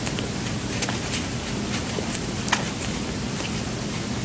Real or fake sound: real